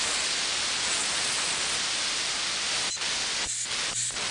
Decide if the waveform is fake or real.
real